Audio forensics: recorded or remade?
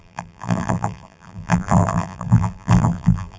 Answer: remade